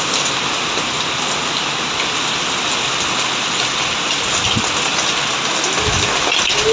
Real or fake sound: real